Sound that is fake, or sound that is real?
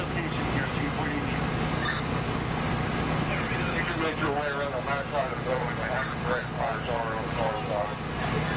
real